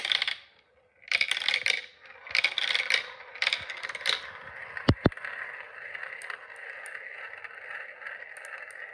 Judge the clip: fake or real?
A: real